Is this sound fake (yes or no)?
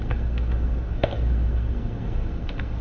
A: yes